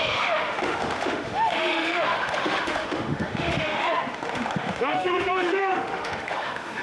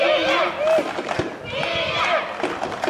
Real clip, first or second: second